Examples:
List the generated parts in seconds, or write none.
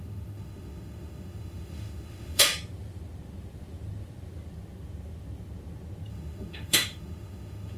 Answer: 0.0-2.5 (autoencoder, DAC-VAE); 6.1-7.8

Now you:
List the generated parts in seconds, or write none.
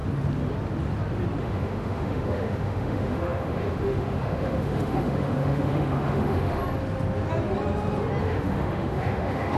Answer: 1.4-6.6 (autoencoder, DAC-VAE); 8.2-9.6